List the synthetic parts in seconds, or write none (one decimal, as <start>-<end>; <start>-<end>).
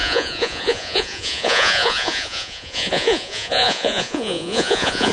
0.0-5.1